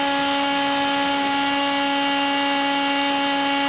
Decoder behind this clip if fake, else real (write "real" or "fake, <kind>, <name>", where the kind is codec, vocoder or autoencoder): real